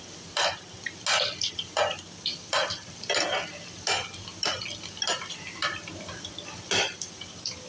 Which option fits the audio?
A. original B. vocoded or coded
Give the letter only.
A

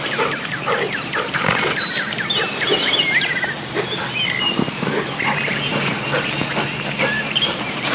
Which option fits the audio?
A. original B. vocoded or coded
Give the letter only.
A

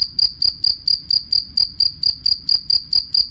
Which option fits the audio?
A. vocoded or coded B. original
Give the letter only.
B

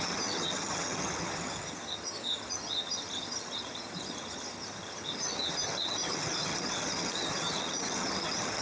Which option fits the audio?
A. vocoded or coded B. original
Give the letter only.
A